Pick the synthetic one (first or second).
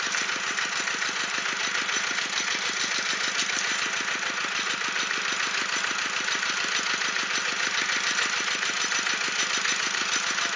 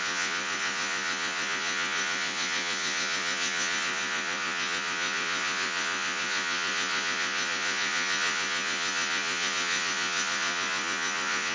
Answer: second